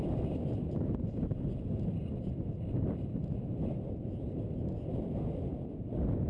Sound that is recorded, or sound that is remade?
recorded